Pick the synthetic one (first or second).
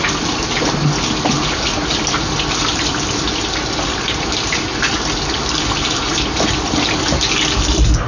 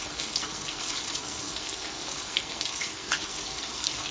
second